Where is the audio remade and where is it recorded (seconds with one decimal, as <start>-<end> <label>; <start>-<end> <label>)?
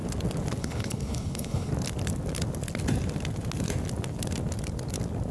0.0-0.6 recorded; 0.6-1.7 remade; 1.7-5.3 recorded